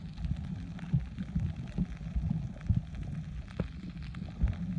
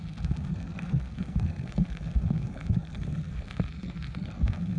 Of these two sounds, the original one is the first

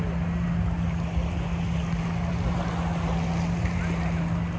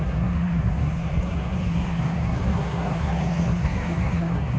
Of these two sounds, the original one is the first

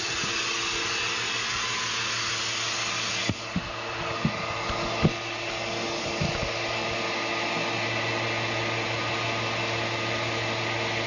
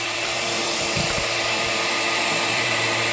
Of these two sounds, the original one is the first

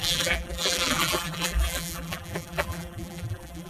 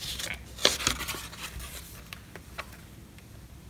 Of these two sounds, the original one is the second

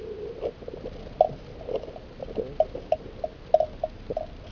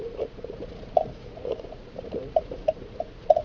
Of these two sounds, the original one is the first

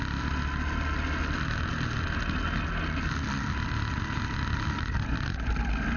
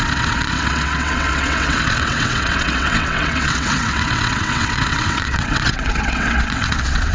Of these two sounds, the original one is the first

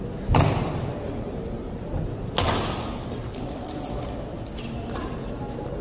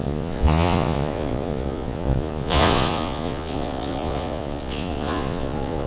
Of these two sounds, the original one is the first